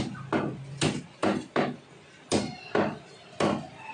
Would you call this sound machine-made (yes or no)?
no